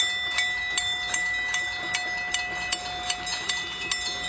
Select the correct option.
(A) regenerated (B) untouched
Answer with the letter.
B